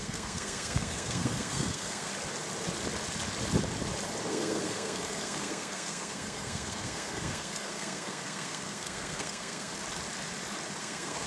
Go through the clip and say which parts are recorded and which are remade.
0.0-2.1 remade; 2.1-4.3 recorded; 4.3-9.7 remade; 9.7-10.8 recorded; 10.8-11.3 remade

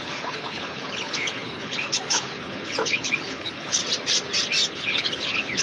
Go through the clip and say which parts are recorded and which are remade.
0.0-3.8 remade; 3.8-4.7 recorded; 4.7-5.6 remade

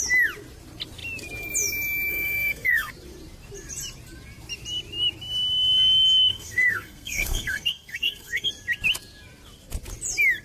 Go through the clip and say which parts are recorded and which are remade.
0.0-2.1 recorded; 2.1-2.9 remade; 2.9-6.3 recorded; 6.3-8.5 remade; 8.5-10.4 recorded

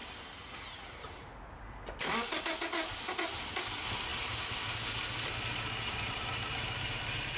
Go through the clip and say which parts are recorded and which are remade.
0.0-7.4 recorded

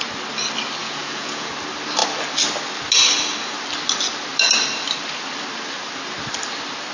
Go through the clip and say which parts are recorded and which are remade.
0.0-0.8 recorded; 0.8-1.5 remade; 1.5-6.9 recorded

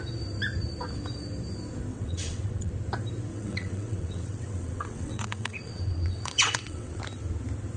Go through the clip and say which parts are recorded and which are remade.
0.0-1.9 recorded; 1.9-2.7 remade; 2.7-3.3 recorded; 3.3-7.0 remade; 7.0-7.8 recorded

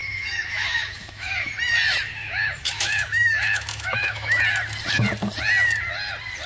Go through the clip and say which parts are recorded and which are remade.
0.0-1.5 remade; 1.5-2.2 recorded; 2.2-4.4 remade; 4.4-6.5 recorded